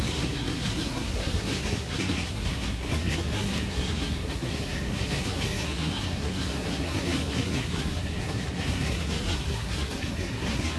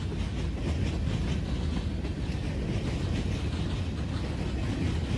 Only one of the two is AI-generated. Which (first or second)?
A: first